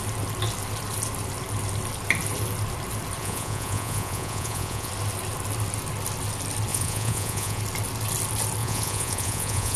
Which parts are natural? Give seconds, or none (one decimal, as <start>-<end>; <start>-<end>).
0.0-3.2; 4.9-6.7; 7.6-8.6